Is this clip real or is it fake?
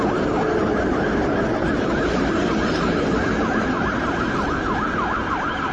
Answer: real